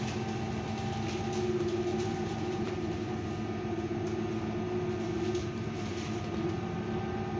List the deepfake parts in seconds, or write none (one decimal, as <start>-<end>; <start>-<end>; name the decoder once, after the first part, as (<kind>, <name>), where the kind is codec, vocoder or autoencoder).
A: 1.9-2.7 (vocoder, BigVGAN v2); 5.4-6.1